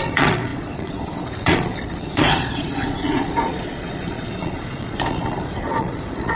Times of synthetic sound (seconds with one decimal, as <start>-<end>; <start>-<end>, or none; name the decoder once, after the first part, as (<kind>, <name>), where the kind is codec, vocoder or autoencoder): 0.0-6.4 (vocoder, Vocos)